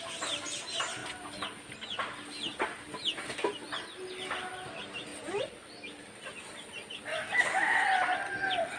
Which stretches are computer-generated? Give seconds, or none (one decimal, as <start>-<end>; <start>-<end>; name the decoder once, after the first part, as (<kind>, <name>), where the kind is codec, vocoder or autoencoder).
7.1-7.8 (autoencoder, DAC-VAE)